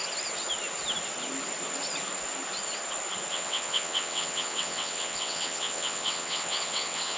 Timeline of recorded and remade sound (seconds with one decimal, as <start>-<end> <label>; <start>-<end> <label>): 0.0-3.3 recorded; 3.3-7.2 remade